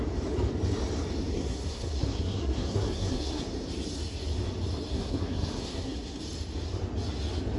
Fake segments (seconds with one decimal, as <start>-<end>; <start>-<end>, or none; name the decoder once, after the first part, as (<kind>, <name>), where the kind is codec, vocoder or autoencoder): 1.3-3.4 (codec, SNAC); 4.9-6.2